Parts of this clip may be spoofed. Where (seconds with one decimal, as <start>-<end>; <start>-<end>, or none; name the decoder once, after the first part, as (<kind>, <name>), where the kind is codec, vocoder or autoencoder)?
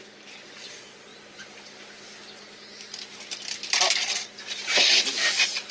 none